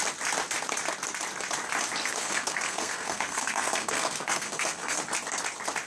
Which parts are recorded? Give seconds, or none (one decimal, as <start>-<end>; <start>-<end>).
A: 0.0-2.0; 5.0-5.9